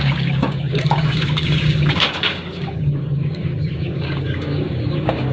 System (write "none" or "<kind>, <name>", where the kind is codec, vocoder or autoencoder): codec, DAC